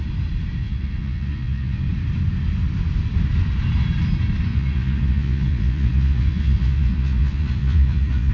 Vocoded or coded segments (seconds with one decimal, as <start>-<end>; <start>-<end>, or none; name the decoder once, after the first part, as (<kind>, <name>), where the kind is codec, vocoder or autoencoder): 0.6-1.8 (vocoder, Vocos); 4.5-8.3